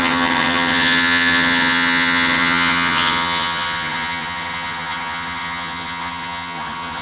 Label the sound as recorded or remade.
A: remade